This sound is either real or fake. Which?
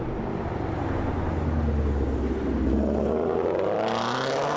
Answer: real